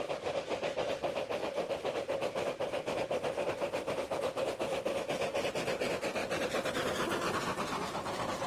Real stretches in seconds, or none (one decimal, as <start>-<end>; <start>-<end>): 0.0-8.5